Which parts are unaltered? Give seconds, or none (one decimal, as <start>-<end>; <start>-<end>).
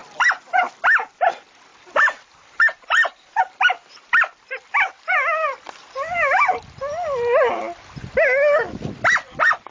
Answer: 0.0-1.7; 3.4-9.7